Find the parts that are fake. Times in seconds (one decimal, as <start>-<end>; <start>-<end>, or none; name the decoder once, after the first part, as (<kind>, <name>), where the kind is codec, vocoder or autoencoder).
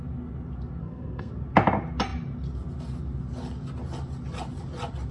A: 0.8-1.3 (codec, SNAC)